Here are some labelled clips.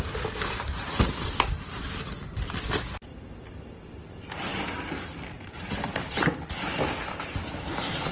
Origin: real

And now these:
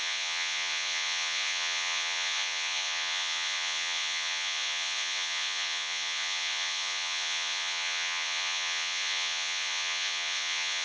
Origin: fake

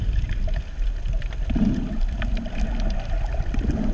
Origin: real